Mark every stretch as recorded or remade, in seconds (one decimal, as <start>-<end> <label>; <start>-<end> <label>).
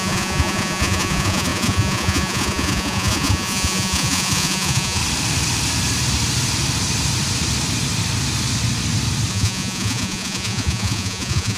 0.0-5.0 remade; 5.0-9.3 recorded; 9.3-11.6 remade